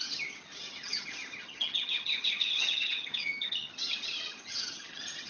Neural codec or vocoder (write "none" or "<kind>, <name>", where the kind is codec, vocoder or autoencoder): vocoder, HiFi-GAN